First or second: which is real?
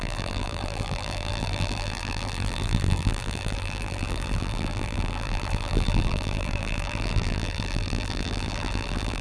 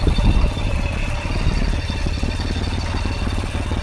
second